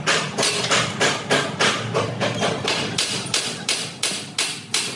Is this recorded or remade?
recorded